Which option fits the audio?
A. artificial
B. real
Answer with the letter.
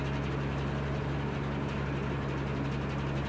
B